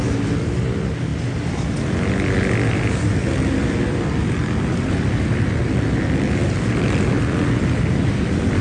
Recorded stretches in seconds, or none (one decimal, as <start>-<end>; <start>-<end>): 0.0-8.6